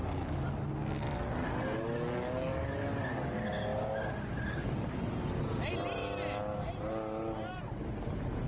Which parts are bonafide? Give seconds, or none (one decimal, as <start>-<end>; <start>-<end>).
0.0-8.5